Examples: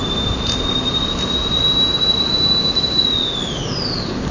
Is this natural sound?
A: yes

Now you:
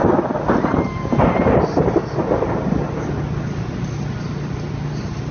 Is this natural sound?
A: yes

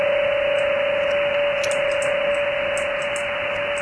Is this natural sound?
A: yes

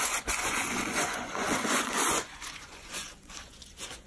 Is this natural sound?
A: no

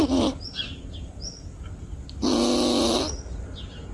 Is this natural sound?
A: yes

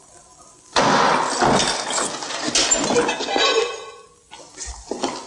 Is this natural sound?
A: yes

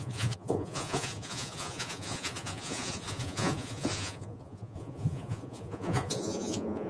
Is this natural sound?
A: no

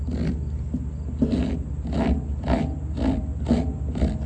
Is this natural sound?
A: yes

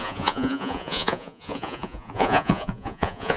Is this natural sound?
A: no